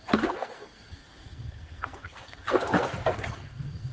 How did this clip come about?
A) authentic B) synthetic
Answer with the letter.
B